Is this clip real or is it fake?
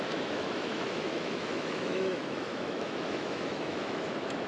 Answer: fake